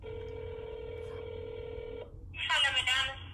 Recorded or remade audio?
recorded